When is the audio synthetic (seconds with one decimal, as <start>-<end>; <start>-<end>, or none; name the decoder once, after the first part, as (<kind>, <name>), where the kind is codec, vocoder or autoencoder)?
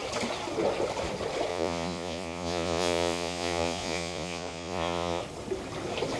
1.5-5.2 (vocoder, Vocos)